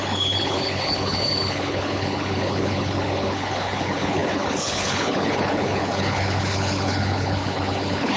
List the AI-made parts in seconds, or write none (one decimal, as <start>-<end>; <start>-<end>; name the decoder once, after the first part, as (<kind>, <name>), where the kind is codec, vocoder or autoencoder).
0.0-8.2 (codec, HILCodec)